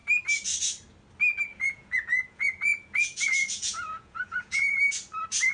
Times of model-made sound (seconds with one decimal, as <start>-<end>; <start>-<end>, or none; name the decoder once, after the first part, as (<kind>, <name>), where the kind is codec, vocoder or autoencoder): 1.5-4.8 (vocoder, Vocos)